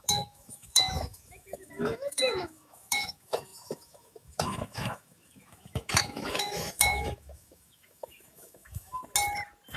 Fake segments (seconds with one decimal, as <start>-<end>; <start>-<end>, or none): 0.0-9.0